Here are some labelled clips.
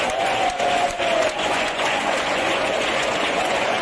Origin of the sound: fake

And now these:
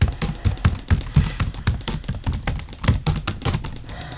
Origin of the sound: real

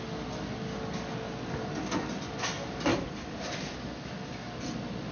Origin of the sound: real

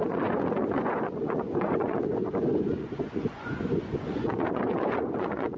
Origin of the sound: fake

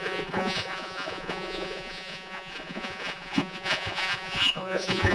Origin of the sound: fake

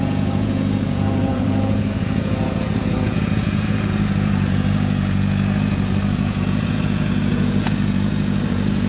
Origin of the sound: fake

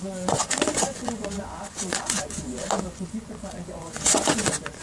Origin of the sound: fake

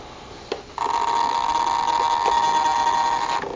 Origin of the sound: real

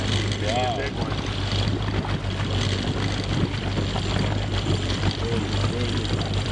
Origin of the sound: real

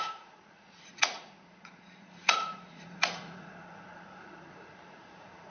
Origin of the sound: fake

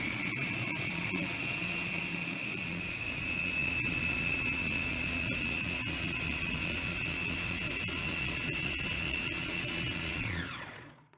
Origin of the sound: fake